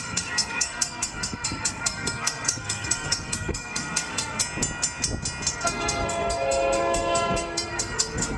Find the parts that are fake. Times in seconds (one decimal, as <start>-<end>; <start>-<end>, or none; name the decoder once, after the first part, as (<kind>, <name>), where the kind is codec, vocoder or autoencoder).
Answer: 0.0-4.4 (codec, SNAC); 5.5-8.4